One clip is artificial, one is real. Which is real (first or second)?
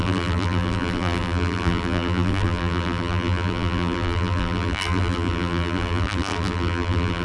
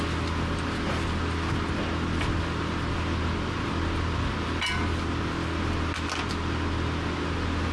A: second